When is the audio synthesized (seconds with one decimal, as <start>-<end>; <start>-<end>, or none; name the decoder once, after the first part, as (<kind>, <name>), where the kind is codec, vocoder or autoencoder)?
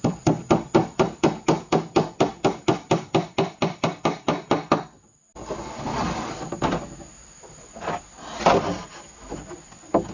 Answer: 0.8-1.8 (vocoder, BigVGAN v2)